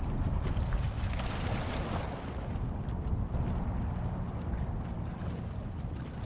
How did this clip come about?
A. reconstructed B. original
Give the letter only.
B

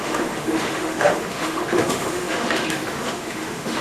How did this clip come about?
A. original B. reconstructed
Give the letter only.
B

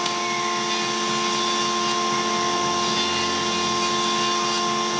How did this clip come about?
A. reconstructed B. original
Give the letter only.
B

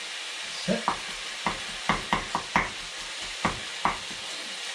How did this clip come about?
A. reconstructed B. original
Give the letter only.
B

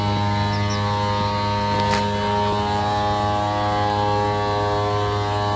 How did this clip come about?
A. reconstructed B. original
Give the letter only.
B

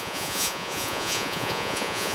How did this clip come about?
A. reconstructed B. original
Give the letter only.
A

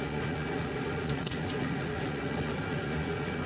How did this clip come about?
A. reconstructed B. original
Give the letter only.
A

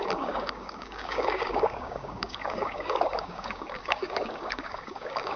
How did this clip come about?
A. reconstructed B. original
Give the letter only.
A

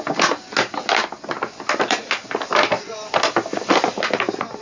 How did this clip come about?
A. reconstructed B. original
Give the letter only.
B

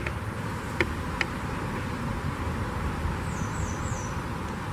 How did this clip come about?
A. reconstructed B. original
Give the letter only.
B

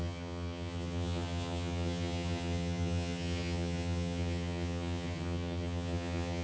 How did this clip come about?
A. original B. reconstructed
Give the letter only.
B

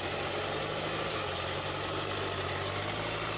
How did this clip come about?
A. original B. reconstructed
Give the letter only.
A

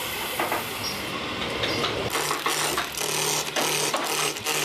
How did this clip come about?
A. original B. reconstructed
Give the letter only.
A